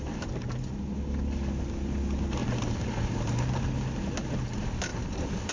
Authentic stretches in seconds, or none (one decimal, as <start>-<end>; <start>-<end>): 0.0-2.4; 3.3-4.9